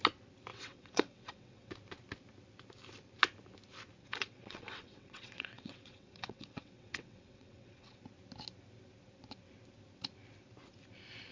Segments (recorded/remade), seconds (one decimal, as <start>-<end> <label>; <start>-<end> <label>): 0.0-0.5 recorded; 0.5-1.7 remade; 1.7-4.0 recorded; 4.0-8.0 remade; 8.0-11.3 recorded